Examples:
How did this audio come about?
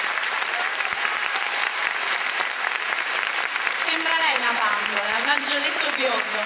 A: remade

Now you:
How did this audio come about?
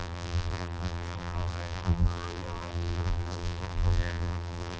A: remade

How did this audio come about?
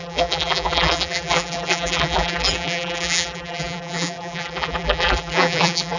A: remade